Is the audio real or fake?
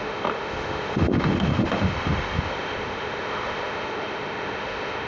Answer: fake